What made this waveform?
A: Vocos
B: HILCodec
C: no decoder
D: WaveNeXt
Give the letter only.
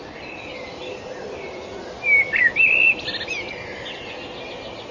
C